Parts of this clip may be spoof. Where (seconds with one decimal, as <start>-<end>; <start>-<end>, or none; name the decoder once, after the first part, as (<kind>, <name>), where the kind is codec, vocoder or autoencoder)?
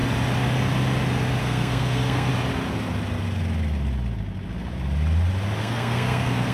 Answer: 1.4-2.3 (codec, SNAC); 5.6-6.5